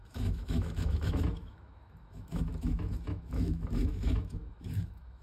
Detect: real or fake fake